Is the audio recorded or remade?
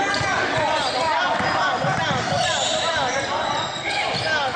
recorded